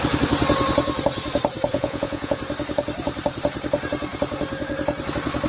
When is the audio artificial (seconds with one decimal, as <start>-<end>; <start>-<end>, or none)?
1.7-2.4